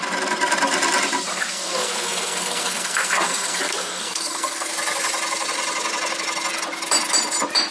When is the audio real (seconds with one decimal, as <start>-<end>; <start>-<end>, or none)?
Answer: 0.0-1.3; 4.7-7.7